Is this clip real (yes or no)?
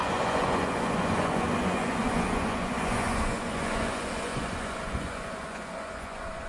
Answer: no